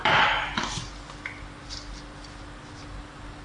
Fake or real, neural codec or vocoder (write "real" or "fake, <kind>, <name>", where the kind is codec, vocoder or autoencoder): real